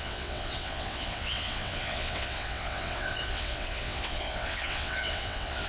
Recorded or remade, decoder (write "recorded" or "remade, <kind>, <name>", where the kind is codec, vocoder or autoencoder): remade, vocoder, WaveNeXt